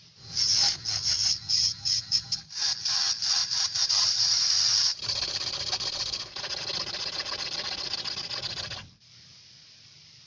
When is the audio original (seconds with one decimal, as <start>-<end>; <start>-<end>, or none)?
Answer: 0.0-3.4; 6.6-10.3